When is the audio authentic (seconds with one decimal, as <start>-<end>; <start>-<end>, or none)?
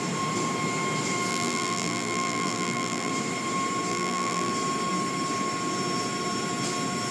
0.0-1.3; 3.1-3.9; 4.5-7.1